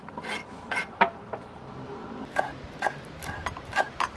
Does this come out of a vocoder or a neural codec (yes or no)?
yes